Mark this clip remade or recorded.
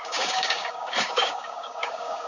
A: remade